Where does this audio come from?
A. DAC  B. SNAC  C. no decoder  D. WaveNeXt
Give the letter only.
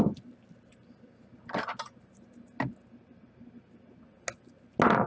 C